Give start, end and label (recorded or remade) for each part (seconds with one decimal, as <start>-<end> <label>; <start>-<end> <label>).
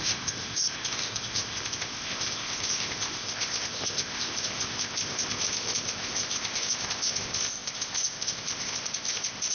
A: 0.0-9.5 remade